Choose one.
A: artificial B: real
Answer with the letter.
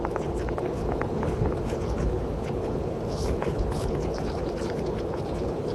A